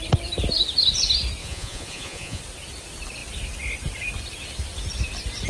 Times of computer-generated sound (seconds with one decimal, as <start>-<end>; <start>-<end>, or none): 1.4-2.4